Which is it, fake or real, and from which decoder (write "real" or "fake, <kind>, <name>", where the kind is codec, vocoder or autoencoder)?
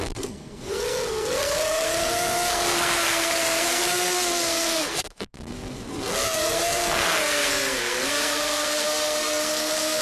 fake, codec, SNAC